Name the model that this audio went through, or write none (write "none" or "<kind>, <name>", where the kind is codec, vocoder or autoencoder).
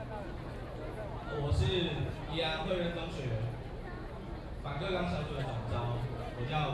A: none